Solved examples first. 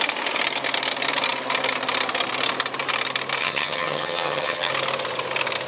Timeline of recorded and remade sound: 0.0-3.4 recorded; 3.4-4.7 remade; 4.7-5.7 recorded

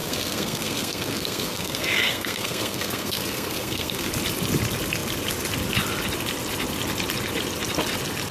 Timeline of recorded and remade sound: 0.0-4.1 remade; 4.1-8.3 recorded

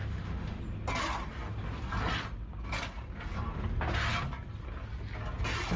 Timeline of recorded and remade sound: 0.0-0.6 remade; 0.6-5.8 recorded

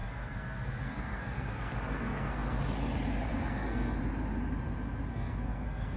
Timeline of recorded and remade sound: 0.0-2.6 remade; 2.6-3.3 recorded; 3.3-4.0 remade; 4.0-5.1 recorded; 5.1-6.0 remade

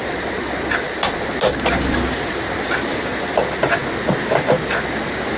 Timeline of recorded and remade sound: 0.0-5.4 recorded

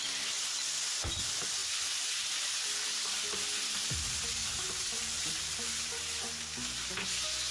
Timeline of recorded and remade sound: 0.0-4.4 recorded; 4.4-6.0 remade; 6.0-7.5 recorded

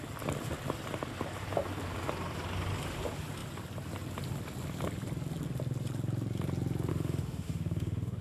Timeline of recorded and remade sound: 0.0-6.9 recorded; 6.9-8.2 remade